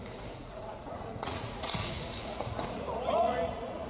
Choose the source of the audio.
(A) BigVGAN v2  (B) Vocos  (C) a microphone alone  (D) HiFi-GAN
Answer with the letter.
B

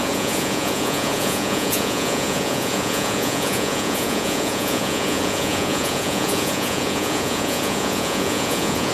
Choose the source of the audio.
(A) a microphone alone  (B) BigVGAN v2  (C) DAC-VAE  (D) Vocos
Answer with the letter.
D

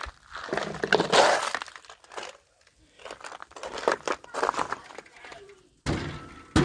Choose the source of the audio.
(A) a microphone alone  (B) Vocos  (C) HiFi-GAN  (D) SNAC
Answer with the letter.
A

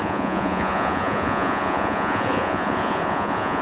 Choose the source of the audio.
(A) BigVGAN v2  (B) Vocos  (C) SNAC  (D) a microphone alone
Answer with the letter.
B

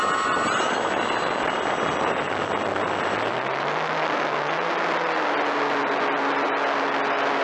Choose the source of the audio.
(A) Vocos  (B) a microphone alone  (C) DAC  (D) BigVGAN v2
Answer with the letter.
B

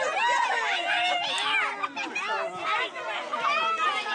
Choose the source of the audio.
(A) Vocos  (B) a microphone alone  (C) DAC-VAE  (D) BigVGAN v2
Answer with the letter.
B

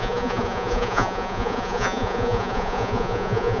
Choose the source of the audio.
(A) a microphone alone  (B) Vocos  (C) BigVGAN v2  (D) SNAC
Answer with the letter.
B